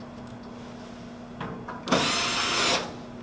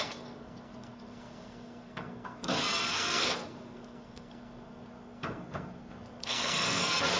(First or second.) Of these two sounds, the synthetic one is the second